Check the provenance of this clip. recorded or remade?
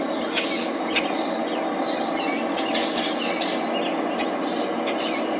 recorded